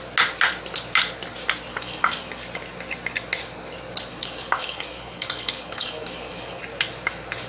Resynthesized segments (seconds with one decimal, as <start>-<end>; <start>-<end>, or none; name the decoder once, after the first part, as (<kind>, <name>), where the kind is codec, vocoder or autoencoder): 1.7-2.4 (codec, DAC); 4.1-6.6